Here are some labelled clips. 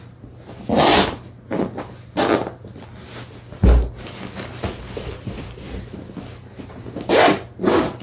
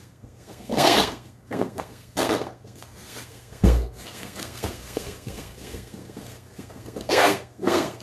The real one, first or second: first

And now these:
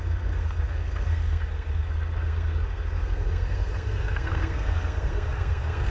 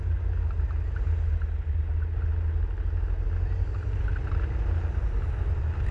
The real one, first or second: second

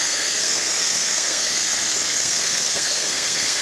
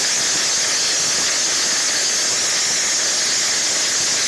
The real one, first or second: second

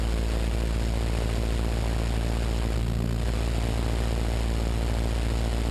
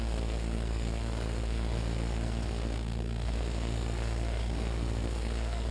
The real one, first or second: first